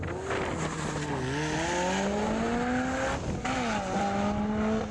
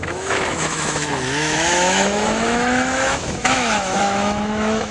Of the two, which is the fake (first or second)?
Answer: second